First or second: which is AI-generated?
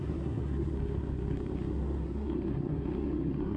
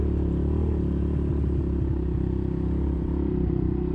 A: first